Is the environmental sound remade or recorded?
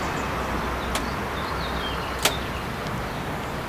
recorded